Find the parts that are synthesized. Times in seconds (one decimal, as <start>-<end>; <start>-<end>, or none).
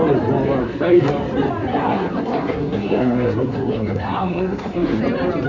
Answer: 0.6-1.1; 1.7-5.0